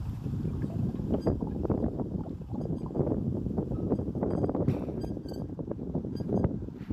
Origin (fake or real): fake